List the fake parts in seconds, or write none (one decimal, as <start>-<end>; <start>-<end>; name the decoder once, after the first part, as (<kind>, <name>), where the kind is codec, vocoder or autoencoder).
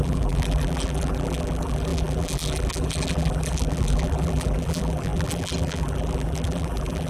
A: 0.0-7.1 (vocoder, BigVGAN v2)